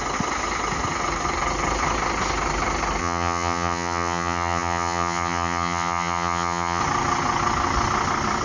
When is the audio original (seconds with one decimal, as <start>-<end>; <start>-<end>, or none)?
0.0-3.0; 6.8-8.4